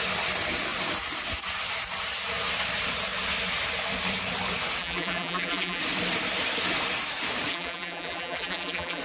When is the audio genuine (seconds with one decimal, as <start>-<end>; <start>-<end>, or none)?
0.0-4.8; 5.8-7.5